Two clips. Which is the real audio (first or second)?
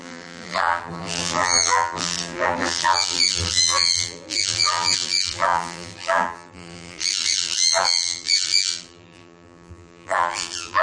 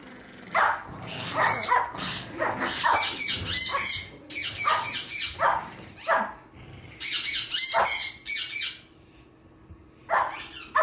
second